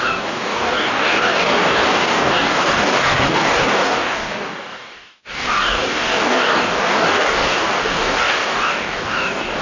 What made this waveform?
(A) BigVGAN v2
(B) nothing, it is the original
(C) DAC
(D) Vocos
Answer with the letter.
C